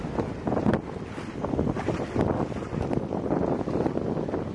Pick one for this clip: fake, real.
real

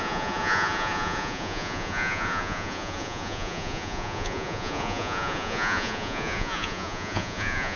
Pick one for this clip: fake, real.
fake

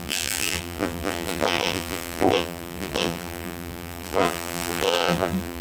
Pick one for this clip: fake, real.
fake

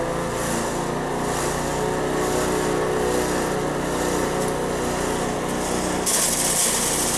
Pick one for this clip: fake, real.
real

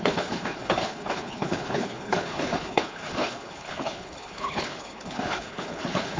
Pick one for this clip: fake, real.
fake